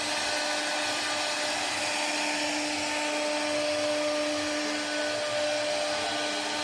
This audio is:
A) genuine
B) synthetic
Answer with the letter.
A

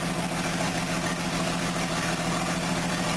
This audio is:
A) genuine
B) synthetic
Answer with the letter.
A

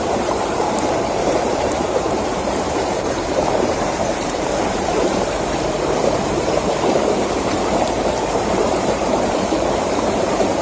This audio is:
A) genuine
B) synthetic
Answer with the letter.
B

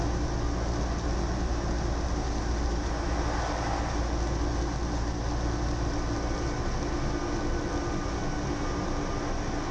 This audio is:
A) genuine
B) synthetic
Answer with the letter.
A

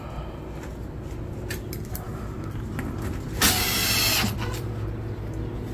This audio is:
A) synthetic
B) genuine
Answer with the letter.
B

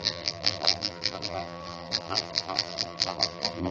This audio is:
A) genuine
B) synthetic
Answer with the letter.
B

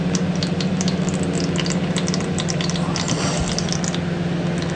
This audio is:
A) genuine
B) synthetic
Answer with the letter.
A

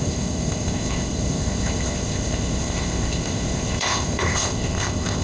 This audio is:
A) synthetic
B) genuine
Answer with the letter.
A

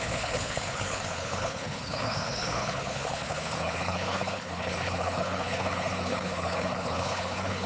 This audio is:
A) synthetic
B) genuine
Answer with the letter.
A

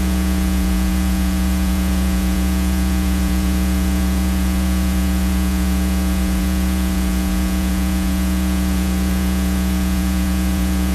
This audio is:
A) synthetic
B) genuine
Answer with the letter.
A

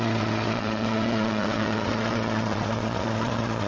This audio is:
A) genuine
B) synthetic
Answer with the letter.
B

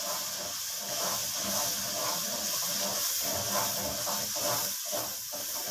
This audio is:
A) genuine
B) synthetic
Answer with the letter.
A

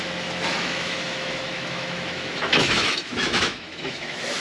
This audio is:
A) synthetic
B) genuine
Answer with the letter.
A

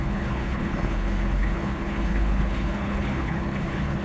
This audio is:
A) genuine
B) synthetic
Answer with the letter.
B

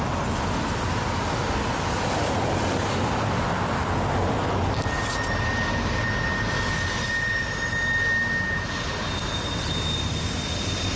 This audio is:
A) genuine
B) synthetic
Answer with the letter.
A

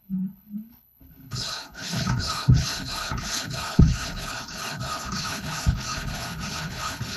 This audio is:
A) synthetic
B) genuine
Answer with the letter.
A